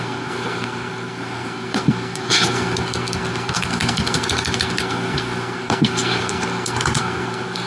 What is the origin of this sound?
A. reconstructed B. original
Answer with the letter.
A